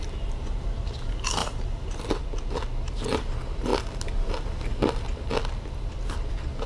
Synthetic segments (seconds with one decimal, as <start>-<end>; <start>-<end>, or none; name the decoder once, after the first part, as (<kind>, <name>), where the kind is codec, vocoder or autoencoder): 1.4-2.0 (vocoder, BigVGAN v2)